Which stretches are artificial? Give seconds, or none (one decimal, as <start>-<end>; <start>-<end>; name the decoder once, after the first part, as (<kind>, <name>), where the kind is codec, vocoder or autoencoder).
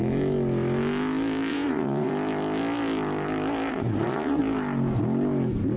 1.5-2.1 (vocoder, Vocos); 3.7-4.4